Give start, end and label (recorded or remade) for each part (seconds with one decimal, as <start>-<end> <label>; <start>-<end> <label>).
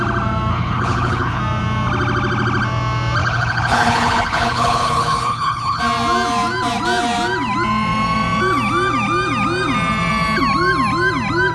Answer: 0.0-0.5 recorded; 0.5-1.4 remade; 1.4-3.2 recorded; 3.2-5.8 remade; 5.8-11.5 recorded